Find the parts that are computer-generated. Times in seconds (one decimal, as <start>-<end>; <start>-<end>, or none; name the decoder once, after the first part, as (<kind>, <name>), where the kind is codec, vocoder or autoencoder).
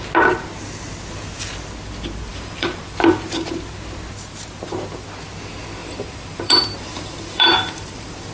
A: 2.3-2.8 (vocoder, BigVGAN v2); 5.8-8.3